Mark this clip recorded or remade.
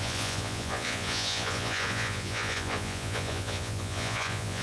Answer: remade